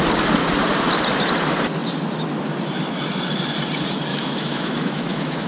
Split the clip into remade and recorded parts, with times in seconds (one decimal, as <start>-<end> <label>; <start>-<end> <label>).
0.0-4.1 recorded; 4.1-5.5 remade